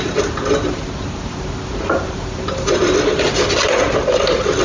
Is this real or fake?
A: real